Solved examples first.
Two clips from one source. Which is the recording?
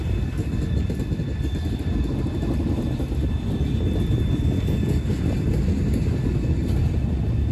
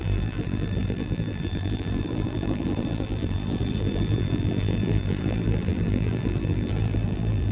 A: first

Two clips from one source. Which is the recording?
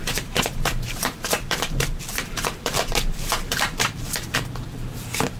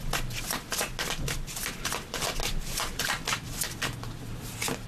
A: second